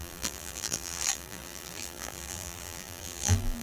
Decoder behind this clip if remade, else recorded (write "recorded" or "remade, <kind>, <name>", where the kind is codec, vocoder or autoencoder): remade, vocoder, BigVGAN v2